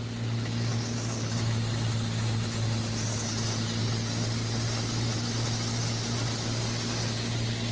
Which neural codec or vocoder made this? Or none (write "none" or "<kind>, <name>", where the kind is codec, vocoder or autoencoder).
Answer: none